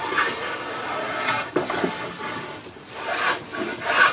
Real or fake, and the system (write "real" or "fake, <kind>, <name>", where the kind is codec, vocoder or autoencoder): real